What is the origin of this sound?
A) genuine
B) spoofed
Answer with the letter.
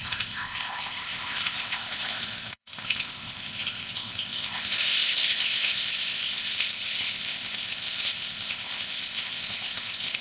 B